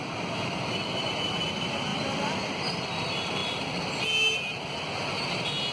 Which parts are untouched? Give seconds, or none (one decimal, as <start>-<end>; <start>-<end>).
0.0-5.7